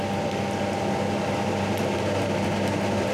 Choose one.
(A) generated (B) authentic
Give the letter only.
B